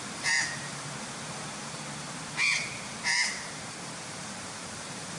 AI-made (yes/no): yes